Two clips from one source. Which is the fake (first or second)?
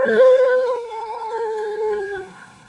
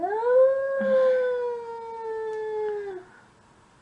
first